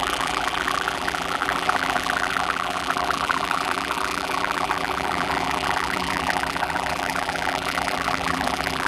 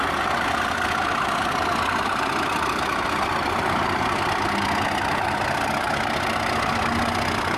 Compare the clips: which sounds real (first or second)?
second